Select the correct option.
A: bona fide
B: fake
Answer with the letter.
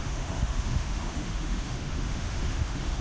B